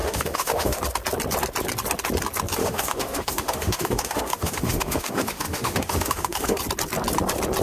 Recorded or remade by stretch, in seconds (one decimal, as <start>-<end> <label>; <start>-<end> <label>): 0.0-0.8 remade; 0.8-2.6 recorded; 2.6-6.6 remade; 6.6-7.6 recorded